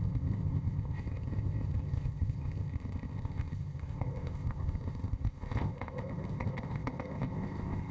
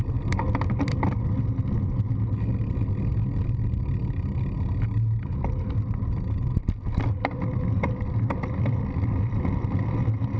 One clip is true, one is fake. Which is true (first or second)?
second